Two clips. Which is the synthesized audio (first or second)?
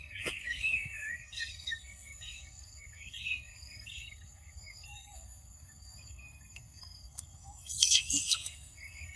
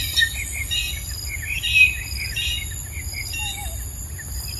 first